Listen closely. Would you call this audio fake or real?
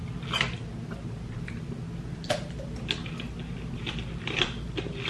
real